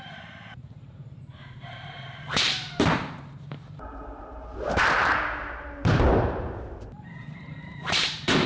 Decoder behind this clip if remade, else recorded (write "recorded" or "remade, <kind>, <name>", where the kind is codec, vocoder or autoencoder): remade, vocoder, BigVGAN v2